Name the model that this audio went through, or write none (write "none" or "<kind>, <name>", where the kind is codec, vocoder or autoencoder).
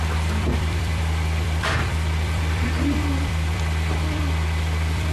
vocoder, BigVGAN v2